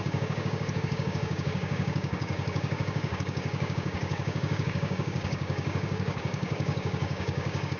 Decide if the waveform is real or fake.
fake